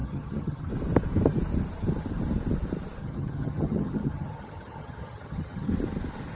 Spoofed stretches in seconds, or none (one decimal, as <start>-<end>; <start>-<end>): 0.0-0.7; 3.0-5.7